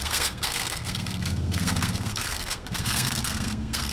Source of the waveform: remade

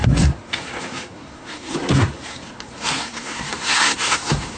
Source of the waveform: remade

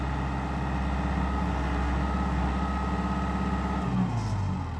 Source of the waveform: recorded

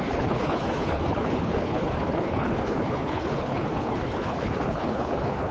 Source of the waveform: remade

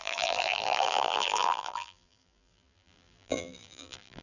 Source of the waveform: remade